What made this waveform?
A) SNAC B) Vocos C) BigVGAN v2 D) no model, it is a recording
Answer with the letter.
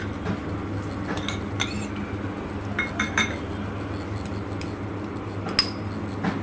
D